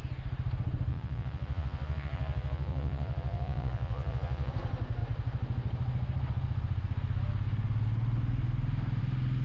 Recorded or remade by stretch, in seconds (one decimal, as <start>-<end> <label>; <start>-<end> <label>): 0.0-0.9 recorded; 0.9-4.5 remade; 4.5-9.4 recorded